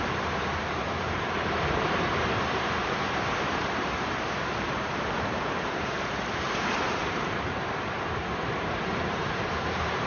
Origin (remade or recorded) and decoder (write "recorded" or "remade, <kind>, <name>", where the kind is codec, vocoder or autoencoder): remade, vocoder, BigVGAN v2